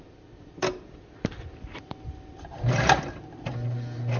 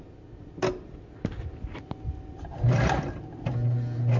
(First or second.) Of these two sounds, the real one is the second